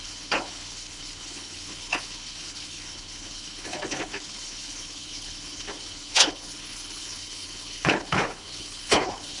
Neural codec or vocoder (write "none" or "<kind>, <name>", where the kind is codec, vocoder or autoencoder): codec, HILCodec